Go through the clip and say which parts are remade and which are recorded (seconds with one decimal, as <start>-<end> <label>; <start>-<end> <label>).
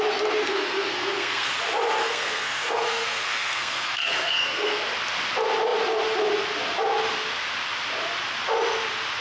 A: 0.0-0.4 recorded; 0.4-1.5 remade; 1.5-2.0 recorded; 2.0-4.8 remade; 4.8-9.2 recorded